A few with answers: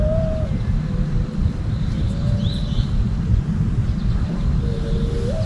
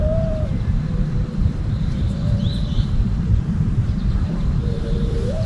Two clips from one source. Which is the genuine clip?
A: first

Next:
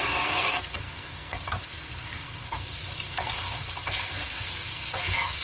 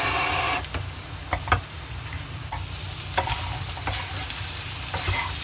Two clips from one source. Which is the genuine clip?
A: second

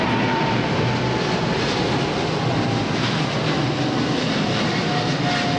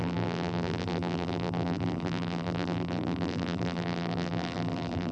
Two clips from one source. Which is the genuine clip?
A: first